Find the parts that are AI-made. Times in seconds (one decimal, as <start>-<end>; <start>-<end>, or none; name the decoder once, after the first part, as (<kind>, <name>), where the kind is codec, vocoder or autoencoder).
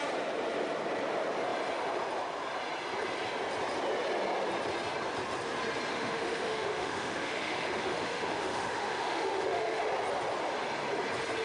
5.9-9.8 (autoencoder, DAC-VAE)